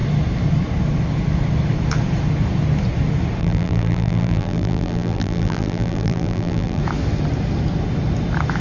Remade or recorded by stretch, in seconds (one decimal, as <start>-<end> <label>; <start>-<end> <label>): 0.0-3.4 recorded; 3.4-6.8 remade; 6.8-8.6 recorded